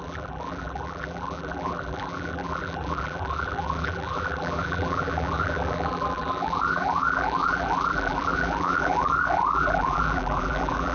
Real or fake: fake